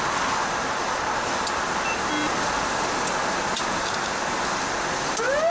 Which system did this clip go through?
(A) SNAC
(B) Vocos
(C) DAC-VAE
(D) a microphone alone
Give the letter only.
D